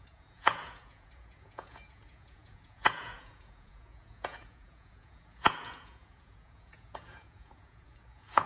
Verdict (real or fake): fake